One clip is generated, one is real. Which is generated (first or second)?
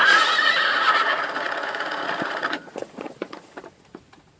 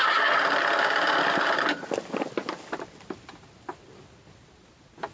first